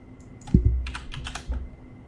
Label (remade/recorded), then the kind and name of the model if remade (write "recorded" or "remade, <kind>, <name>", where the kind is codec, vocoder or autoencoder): recorded